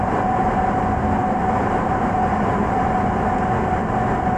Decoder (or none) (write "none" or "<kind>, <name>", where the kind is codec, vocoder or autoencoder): none